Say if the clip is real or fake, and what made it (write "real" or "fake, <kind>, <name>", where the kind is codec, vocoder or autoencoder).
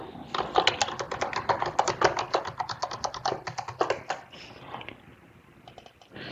real